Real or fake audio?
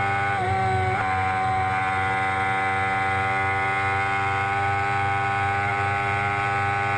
real